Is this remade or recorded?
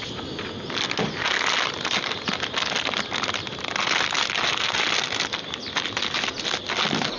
recorded